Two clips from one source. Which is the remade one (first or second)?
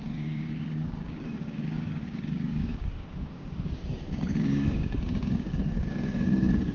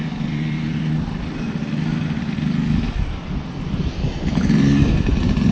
first